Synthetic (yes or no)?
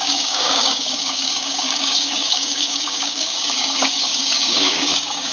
yes